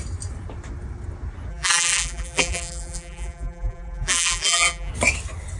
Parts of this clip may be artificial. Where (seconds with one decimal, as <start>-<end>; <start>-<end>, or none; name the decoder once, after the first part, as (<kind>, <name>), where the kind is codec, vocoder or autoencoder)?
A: 1.5-4.9 (vocoder, BigVGAN v2)